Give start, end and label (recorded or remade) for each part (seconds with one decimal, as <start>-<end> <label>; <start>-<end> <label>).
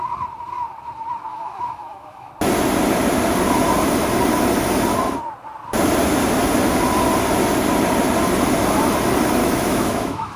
0.0-1.3 recorded; 1.3-2.3 remade; 2.3-9.4 recorded; 9.4-10.4 remade